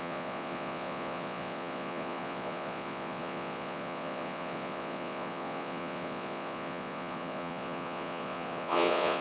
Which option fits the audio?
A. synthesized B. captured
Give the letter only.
A